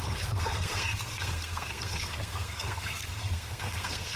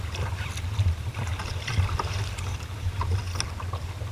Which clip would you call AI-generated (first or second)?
first